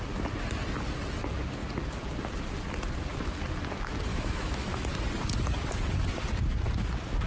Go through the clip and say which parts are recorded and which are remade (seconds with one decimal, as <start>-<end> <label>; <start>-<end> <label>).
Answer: 0.0-4.1 recorded; 4.1-4.8 remade; 4.8-7.3 recorded